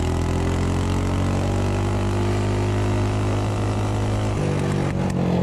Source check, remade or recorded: recorded